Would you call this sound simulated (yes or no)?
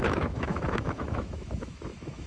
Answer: yes